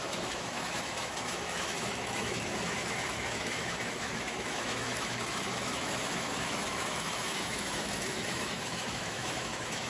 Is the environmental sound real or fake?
fake